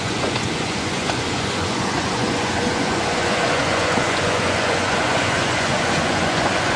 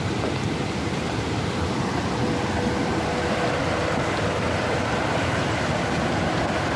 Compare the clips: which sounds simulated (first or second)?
first